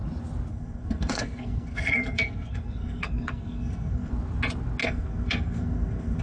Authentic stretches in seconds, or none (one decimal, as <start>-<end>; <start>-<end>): 0.0-0.5; 4.1-4.8